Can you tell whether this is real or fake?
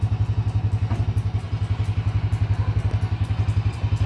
real